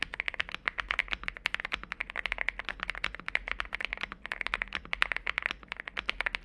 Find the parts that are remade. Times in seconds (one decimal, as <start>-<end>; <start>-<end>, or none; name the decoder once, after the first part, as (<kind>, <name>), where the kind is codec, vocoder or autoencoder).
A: none